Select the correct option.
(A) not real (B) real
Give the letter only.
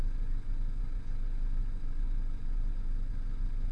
A